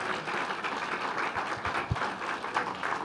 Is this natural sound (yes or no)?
yes